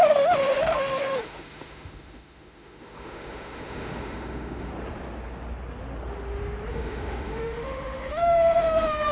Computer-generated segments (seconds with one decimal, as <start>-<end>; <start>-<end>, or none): 0.0-4.7; 6.7-9.1